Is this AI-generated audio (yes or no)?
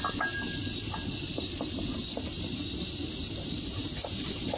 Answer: no